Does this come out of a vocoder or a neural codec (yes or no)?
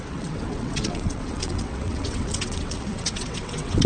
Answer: yes